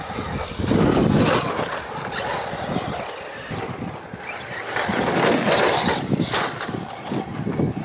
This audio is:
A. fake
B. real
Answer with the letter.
B